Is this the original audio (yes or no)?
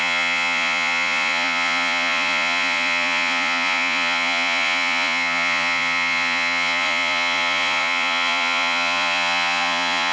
no